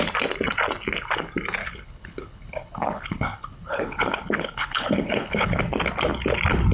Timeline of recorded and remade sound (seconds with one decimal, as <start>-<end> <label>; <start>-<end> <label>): 0.0-1.6 recorded; 1.6-5.6 remade; 5.6-6.7 recorded